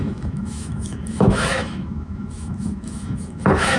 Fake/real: fake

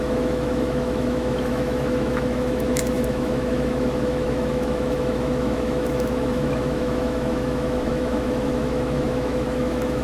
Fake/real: fake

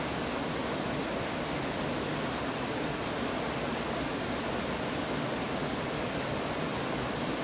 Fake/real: real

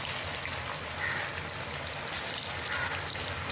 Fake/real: real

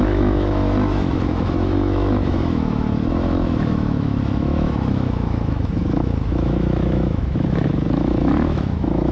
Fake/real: fake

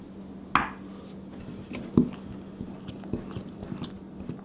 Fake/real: real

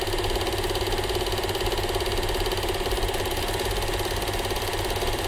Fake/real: real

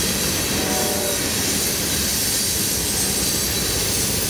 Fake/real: real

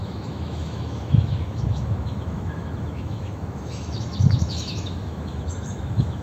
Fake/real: fake